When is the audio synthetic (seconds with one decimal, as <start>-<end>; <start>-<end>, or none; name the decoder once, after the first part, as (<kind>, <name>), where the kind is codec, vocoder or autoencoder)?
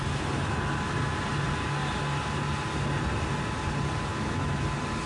4.1-4.6 (autoencoder, DAC-VAE)